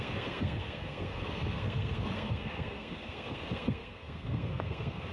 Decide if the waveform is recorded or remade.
remade